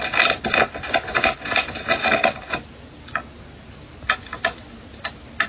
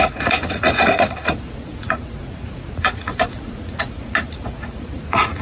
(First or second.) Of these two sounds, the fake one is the second